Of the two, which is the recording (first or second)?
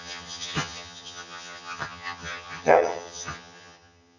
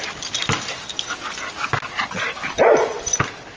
second